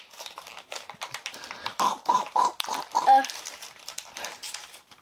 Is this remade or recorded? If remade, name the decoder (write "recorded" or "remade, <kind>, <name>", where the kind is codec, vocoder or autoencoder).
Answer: remade, vocoder, BigVGAN v2